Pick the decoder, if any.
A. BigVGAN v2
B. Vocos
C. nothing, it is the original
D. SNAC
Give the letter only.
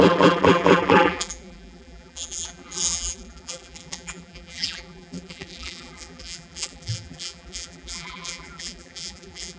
A